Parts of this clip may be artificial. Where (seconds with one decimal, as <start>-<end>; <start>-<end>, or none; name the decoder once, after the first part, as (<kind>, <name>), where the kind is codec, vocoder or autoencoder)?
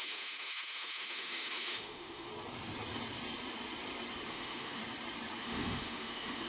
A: 0.0-2.3 (autoencoder, DAC-VAE); 4.3-4.8; 5.4-6.5